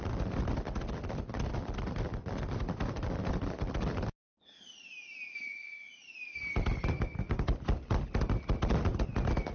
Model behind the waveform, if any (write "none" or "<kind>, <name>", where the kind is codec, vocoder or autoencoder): none